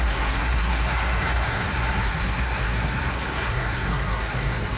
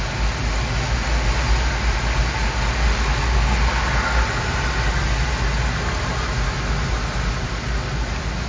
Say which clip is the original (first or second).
second